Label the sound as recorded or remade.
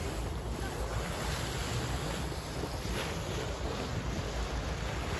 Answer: recorded